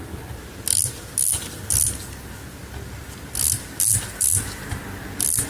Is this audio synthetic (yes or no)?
no